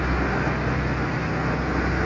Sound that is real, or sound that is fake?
real